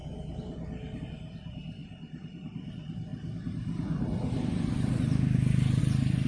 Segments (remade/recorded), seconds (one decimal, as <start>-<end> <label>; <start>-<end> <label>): 0.0-6.3 recorded